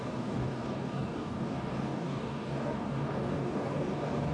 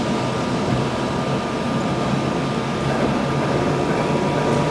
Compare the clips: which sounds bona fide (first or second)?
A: second